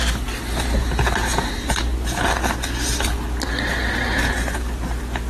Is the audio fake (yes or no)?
no